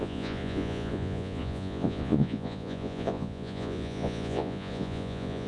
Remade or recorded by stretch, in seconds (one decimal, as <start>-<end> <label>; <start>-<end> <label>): 0.0-5.5 remade